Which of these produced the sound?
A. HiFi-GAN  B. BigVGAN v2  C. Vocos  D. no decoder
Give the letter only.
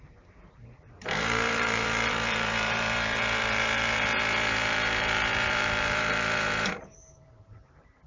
B